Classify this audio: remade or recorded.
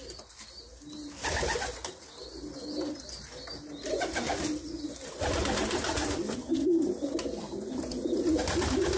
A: recorded